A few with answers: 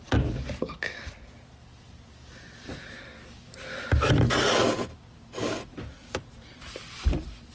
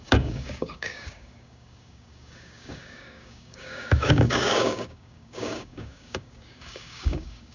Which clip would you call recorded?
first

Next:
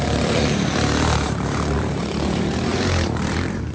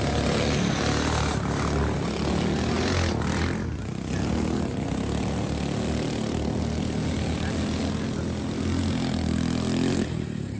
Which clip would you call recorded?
second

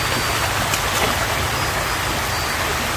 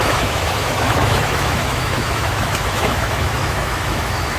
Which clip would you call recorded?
first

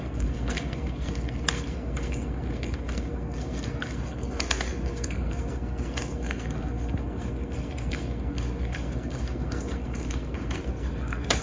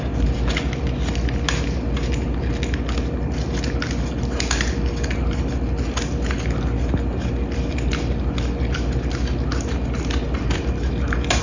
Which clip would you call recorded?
second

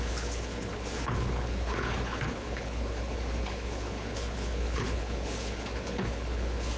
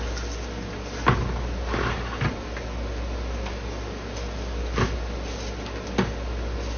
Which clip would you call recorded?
second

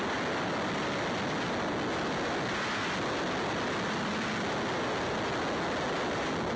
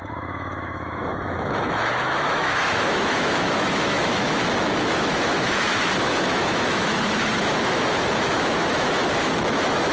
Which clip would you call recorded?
first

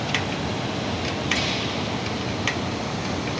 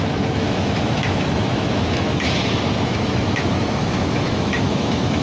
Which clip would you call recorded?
first